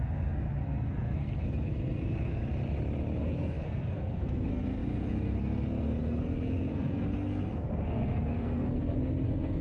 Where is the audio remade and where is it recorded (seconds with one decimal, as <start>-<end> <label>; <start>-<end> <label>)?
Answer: 0.0-2.4 remade; 2.4-3.2 recorded; 3.2-9.6 remade